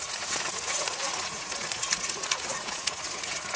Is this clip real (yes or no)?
no